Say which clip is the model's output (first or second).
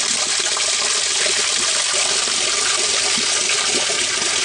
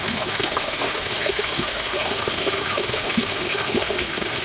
second